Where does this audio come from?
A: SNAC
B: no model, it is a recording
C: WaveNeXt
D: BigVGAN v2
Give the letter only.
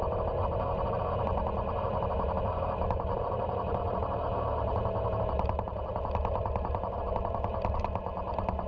B